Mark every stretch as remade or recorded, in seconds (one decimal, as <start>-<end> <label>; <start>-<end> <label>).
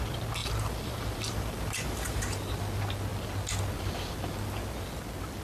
0.0-0.4 recorded; 0.4-2.6 remade; 2.6-5.4 recorded